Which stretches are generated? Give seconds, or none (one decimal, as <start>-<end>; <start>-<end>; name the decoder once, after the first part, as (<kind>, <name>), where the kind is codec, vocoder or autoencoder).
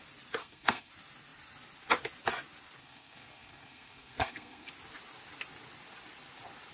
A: 0.4-0.9 (codec, SNAC); 2.8-4.7